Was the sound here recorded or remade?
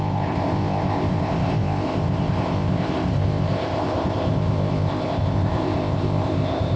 remade